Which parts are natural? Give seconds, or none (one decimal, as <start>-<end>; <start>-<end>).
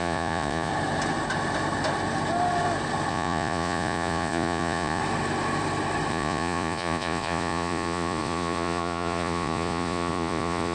0.7-3.1; 5.0-6.1